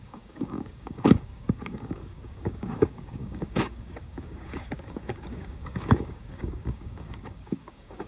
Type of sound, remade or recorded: remade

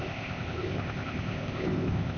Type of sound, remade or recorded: remade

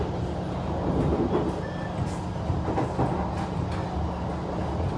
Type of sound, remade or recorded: recorded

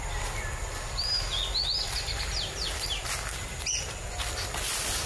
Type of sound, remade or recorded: recorded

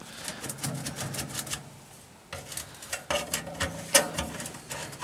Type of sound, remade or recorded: recorded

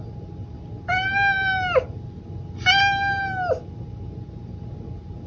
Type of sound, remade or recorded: recorded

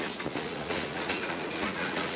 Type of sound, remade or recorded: remade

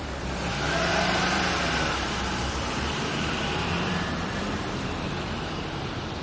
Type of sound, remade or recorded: remade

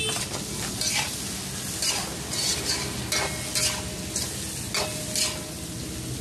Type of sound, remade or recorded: recorded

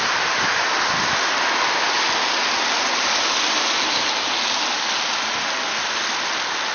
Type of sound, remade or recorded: recorded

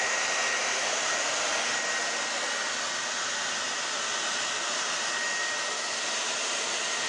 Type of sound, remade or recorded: recorded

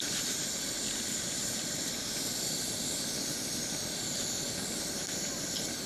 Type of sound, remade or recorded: recorded